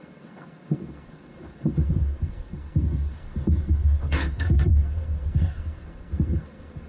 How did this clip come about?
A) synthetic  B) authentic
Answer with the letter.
A